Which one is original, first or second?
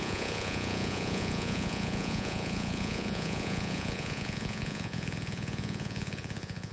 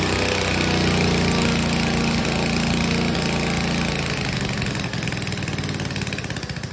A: second